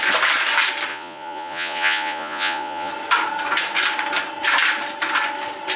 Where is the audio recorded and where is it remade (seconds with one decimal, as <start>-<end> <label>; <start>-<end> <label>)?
0.0-0.9 recorded; 0.9-2.9 remade; 2.9-5.8 recorded